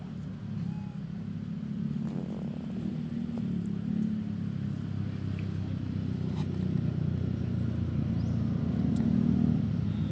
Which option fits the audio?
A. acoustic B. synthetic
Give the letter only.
A